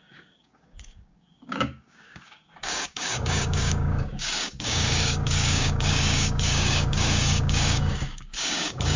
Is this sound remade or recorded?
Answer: remade